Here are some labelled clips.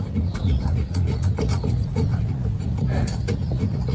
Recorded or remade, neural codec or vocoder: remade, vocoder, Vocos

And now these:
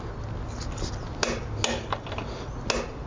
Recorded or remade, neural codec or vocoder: recorded